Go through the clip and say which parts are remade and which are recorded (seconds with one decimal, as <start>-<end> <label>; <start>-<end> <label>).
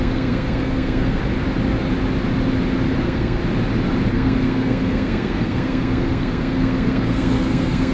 0.0-1.2 remade; 1.2-3.0 recorded; 3.0-3.4 remade; 3.4-4.1 recorded; 4.1-7.9 remade